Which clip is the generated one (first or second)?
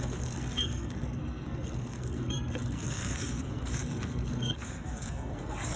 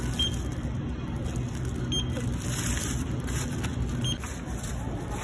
first